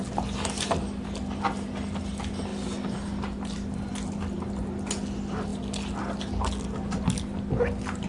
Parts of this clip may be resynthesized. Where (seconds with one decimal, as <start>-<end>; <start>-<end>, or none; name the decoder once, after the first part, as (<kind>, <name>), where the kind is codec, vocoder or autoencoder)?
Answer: none